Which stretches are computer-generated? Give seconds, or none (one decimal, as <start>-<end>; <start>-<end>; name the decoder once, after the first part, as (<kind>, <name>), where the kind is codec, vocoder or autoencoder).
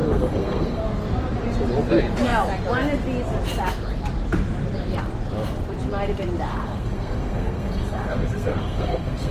0.0-0.8 (codec, SNAC); 6.5-9.3